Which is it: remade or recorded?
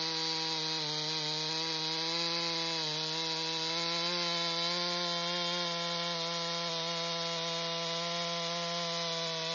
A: recorded